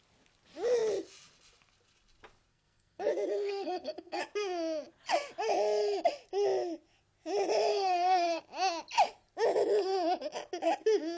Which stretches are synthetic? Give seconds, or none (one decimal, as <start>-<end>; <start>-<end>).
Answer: 2.5-4.2; 7.7-8.4

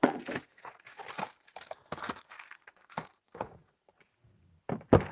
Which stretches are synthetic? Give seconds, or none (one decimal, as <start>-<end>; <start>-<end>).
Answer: 0.0-1.0; 2.1-4.1

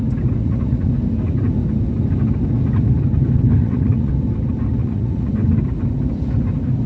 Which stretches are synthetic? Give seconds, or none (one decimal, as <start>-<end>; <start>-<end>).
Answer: 0.4-0.9; 3.6-4.1; 4.8-5.3

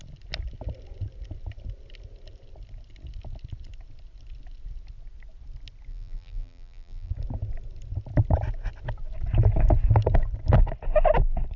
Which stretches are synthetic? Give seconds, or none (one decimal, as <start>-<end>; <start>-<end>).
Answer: 5.9-7.1

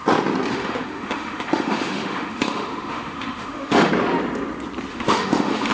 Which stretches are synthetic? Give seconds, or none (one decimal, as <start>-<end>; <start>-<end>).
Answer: 0.5-3.9; 4.9-5.7

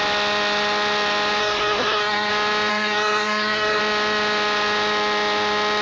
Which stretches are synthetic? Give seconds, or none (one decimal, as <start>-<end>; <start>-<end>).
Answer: 1.4-2.3; 2.7-3.8